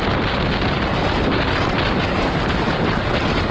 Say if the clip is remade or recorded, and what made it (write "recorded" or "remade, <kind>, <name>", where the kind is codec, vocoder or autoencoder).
recorded